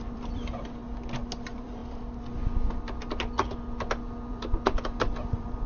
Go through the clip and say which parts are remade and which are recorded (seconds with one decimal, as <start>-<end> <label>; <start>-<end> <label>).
0.0-0.8 remade; 0.8-1.4 recorded; 1.4-1.8 remade; 1.8-4.3 recorded; 4.3-5.7 remade